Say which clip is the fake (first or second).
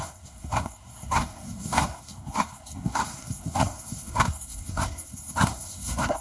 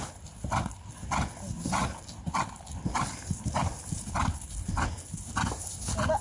first